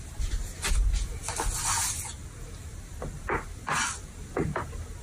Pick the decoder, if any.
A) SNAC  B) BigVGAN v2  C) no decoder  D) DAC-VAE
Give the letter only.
C